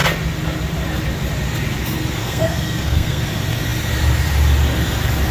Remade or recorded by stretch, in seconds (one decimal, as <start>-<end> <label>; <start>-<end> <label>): 0.0-2.2 recorded; 2.2-3.2 remade; 3.2-5.3 recorded